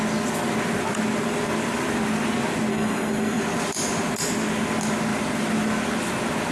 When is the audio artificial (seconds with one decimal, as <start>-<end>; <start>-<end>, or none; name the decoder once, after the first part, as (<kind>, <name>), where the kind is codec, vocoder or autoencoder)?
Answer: 2.7-3.4 (codec, SNAC)